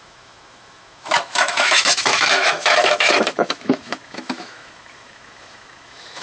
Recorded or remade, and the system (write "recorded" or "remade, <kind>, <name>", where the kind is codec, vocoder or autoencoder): remade, autoencoder, DAC-VAE